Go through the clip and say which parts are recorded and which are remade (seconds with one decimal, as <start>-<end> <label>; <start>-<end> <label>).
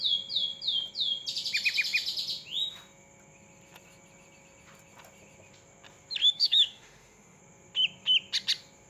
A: 0.0-6.2 recorded; 6.2-7.4 remade; 7.4-8.9 recorded